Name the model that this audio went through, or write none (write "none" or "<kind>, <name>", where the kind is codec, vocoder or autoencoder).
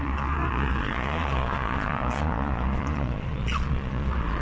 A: vocoder, Vocos